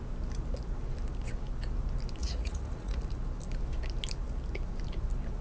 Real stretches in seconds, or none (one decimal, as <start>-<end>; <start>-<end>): 0.0-2.2; 3.0-5.4